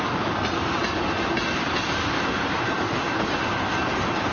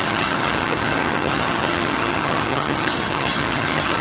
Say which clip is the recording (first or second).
first